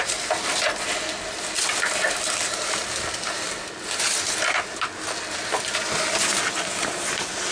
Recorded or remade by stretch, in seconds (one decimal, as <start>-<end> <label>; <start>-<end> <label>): 0.0-7.5 recorded